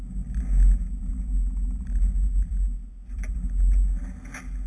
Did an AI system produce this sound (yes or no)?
no